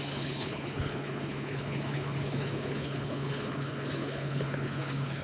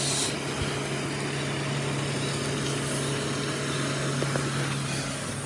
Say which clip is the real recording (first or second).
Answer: second